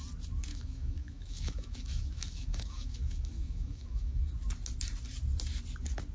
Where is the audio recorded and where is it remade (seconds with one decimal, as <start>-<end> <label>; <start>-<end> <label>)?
0.0-0.5 recorded; 0.5-4.2 remade; 4.2-6.1 recorded